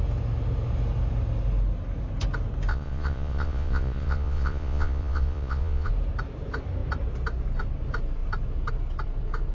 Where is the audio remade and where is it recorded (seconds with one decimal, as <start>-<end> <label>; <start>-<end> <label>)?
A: 0.0-2.7 recorded; 2.7-5.9 remade; 5.9-9.5 recorded

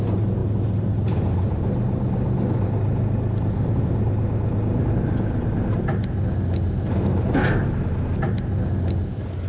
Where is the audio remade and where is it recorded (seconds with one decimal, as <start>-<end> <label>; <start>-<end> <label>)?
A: 0.0-9.5 recorded

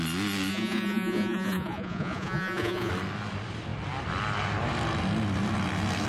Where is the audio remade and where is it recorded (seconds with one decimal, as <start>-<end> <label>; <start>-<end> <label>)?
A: 0.0-0.5 recorded; 0.5-2.9 remade; 2.9-6.1 recorded

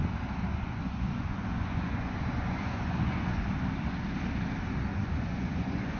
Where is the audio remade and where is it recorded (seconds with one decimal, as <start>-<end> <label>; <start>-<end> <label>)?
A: 0.0-0.5 recorded; 0.5-3.4 remade; 3.4-4.9 recorded; 4.9-6.0 remade

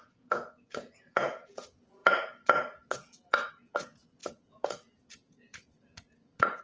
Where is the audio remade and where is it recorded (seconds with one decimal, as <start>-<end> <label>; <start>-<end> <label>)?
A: 0.0-6.6 remade